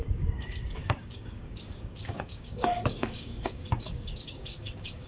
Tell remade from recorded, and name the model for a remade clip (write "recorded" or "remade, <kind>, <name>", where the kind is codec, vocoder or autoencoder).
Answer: remade, codec, DAC